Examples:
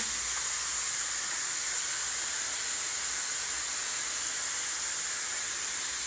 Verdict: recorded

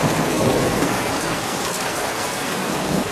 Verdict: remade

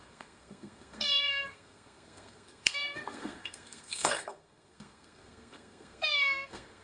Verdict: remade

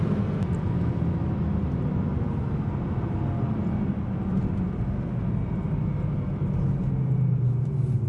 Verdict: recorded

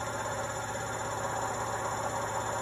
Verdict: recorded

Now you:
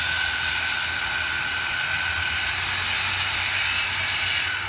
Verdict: recorded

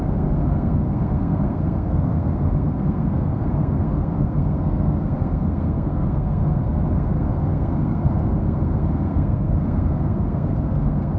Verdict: remade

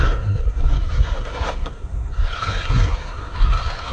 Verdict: remade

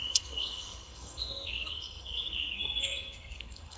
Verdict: remade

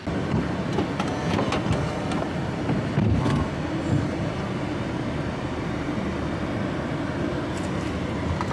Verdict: recorded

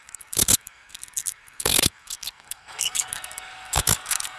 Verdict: remade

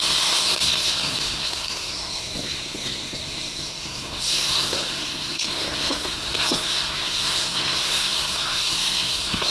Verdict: remade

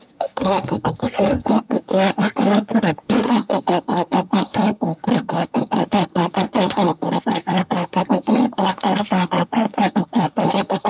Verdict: remade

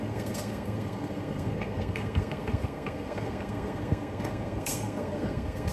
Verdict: remade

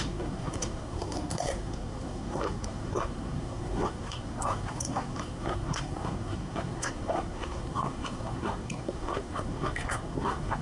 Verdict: remade